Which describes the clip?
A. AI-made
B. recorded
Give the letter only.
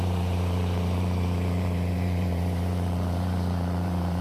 A